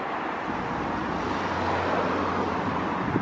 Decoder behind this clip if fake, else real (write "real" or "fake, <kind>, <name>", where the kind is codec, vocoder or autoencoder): real